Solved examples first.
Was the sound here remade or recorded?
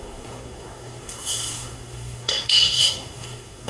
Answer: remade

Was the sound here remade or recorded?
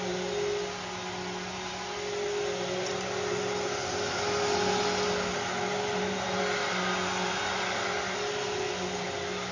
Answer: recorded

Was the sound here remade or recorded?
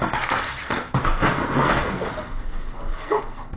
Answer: remade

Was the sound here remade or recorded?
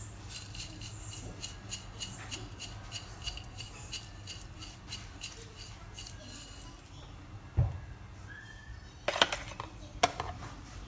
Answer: recorded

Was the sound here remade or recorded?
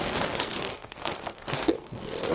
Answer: remade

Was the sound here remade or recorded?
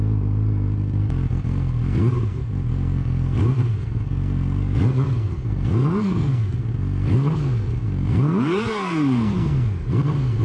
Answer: remade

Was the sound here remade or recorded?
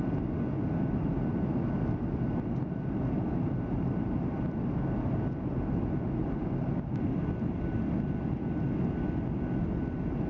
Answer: recorded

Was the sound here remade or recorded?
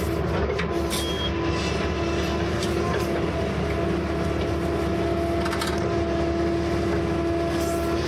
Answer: recorded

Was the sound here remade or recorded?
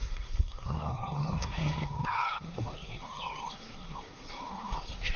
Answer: remade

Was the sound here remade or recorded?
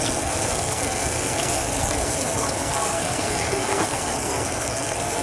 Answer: remade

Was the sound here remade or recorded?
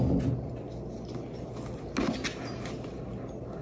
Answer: recorded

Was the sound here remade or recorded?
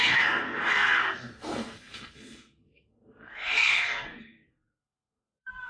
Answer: remade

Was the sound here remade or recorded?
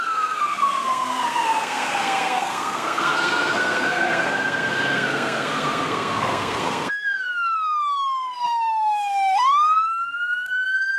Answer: remade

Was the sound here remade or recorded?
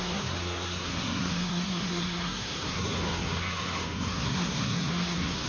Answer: remade